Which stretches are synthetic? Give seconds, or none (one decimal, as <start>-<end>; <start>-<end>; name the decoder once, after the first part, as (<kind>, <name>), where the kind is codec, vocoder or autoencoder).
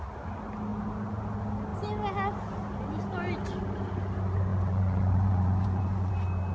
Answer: 4.5-6.1 (vocoder, Vocos)